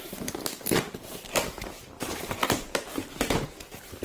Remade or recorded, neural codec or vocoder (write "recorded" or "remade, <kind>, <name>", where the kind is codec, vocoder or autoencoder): remade, vocoder, BigVGAN v2